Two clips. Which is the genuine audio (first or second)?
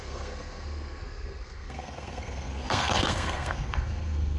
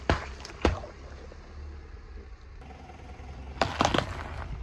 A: second